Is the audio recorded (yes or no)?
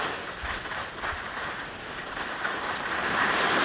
yes